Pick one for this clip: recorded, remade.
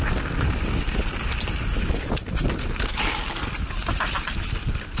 recorded